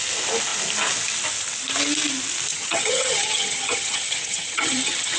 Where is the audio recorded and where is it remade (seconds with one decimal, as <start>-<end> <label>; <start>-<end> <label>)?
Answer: 0.0-2.5 recorded; 2.5-5.2 remade